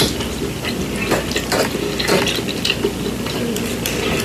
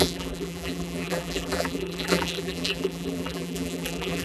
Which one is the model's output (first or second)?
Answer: second